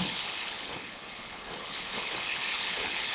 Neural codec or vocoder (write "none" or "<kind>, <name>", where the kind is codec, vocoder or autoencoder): codec, HILCodec